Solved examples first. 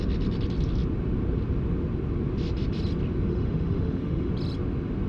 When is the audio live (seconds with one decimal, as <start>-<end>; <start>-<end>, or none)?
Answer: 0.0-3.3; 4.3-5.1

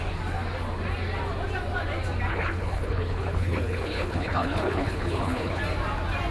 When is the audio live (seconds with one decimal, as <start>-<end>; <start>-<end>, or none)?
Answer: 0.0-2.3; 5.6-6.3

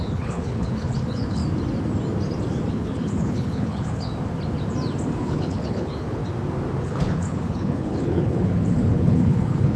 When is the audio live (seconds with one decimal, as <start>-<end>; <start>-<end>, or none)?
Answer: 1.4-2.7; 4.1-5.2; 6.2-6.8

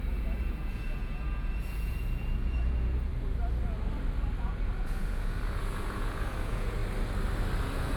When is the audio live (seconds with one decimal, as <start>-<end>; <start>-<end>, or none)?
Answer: 3.1-4.4; 6.8-7.6